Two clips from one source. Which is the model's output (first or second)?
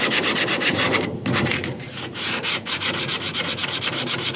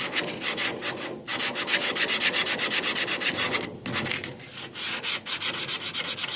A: first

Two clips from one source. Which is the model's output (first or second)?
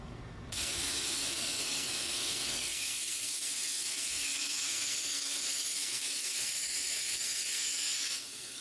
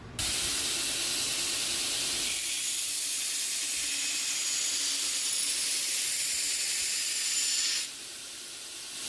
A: first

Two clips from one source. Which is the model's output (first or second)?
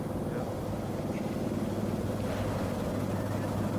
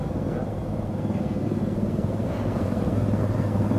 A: second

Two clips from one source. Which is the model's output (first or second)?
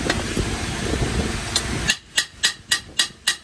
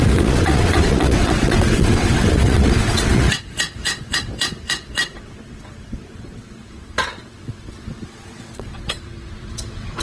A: second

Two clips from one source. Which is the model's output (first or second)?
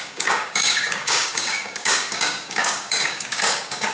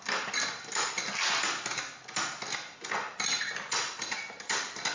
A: first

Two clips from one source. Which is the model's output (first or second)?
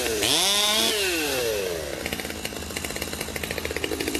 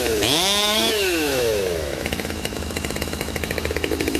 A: second